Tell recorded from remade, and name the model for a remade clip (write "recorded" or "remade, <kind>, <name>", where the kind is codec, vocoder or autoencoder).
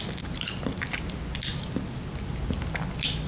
recorded